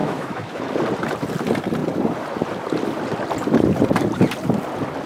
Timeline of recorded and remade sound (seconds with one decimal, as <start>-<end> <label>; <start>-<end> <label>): 0.0-0.6 remade; 0.6-5.1 recorded